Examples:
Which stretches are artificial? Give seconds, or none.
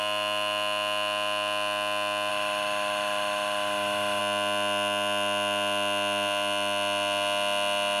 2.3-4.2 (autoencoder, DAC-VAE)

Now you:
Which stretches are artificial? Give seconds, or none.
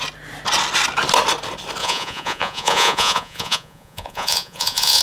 1.8-5.0 (vocoder, Vocos)